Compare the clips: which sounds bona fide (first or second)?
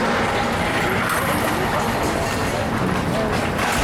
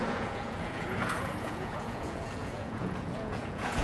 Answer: first